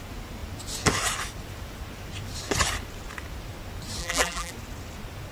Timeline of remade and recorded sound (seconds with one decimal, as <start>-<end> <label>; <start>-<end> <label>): 0.0-4.0 recorded; 4.0-4.5 remade; 4.5-5.3 recorded